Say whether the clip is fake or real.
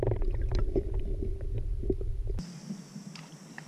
real